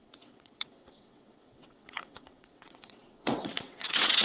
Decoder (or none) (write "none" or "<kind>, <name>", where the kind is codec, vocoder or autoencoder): vocoder, WaveNeXt